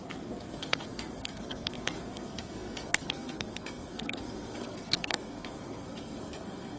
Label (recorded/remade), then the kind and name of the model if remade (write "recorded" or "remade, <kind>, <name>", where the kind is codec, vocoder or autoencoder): remade, codec, SNAC